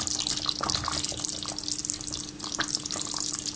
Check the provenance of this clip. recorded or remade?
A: recorded